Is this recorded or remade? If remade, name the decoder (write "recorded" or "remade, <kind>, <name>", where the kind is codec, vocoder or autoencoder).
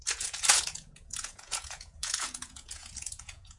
remade, vocoder, Vocos